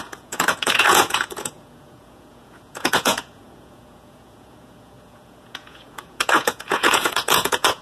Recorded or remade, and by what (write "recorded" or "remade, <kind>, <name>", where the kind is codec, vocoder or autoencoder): remade, vocoder, Vocos